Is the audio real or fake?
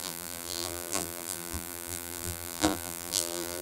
fake